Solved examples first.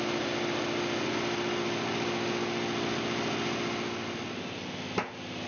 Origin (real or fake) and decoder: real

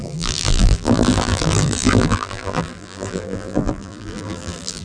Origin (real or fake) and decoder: fake, vocoder, BigVGAN v2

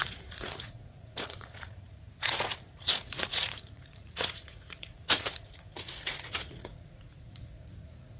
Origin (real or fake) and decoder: fake, vocoder, Vocos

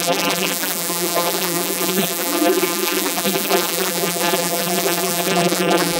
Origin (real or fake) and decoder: fake, vocoder, BigVGAN v2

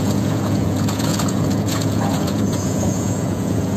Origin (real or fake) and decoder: fake, vocoder, Vocos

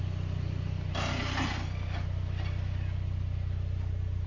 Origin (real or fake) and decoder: real